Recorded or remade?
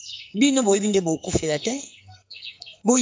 remade